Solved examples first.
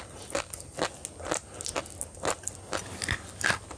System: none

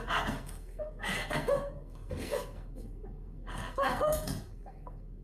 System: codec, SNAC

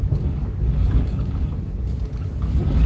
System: codec, DAC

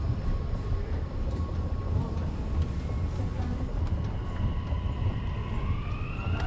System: none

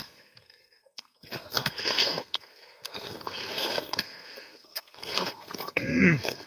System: codec, SNAC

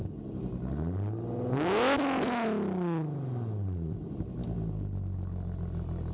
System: none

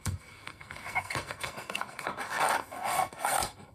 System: codec, SNAC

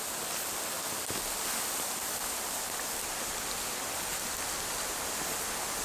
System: none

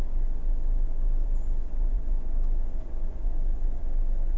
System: vocoder, Vocos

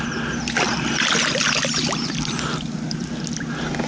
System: none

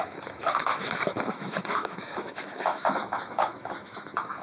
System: autoencoder, DAC-VAE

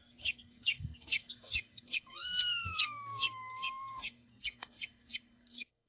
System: codec, SNAC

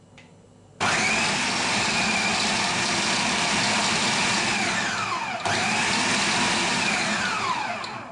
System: none